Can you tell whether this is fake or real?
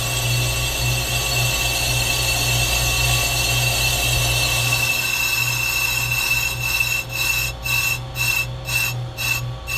real